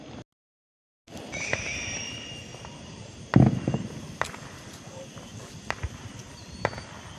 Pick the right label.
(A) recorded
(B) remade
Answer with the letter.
A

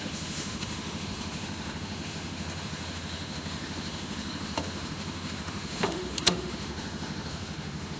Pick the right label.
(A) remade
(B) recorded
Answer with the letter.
A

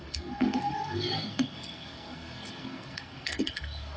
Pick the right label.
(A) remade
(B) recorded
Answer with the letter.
A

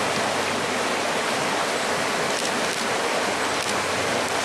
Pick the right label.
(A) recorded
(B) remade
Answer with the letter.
A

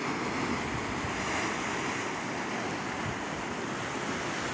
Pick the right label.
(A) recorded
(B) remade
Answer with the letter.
A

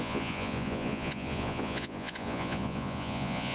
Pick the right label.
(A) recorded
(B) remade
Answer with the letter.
B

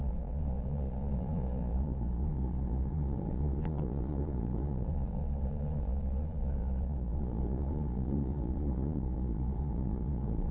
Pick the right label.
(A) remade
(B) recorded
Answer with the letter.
A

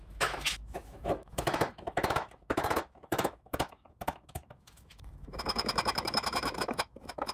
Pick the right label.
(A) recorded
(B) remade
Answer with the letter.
B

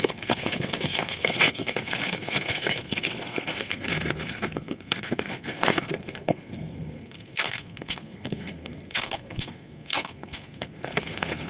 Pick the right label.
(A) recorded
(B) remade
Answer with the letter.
B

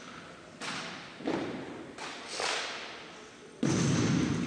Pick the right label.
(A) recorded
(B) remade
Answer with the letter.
A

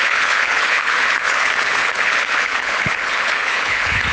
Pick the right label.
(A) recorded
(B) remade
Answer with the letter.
B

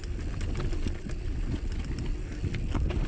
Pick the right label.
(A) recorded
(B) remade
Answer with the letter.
A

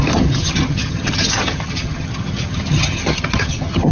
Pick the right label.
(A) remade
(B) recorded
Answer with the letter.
A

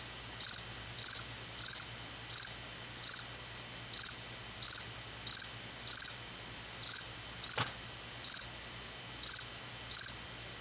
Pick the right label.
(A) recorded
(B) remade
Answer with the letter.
A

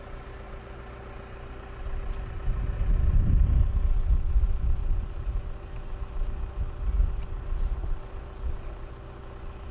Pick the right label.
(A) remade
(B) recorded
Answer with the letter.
B